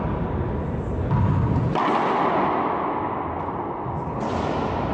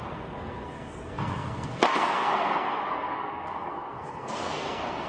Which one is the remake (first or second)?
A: second